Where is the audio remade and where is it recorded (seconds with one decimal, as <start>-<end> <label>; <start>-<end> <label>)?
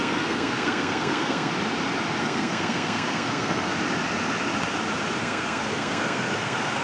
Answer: 0.0-1.5 remade; 1.5-2.2 recorded; 2.2-3.7 remade; 3.7-5.2 recorded; 5.2-6.8 remade